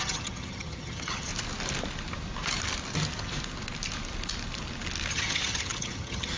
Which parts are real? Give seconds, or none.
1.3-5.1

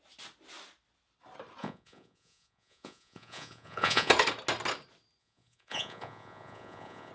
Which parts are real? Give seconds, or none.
0.0-1.6; 4.1-5.2

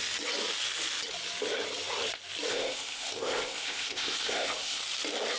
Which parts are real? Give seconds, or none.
0.0-2.5; 4.8-5.4

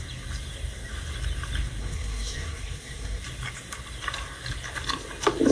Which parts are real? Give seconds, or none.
0.0-1.8; 3.2-5.5

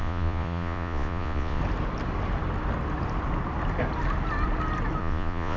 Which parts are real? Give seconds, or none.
1.6-5.0

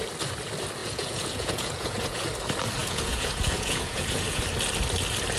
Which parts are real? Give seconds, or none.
0.0-0.8; 2.3-2.8; 4.4-5.4

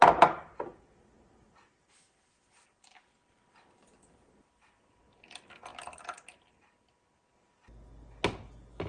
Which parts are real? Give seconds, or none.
0.0-8.9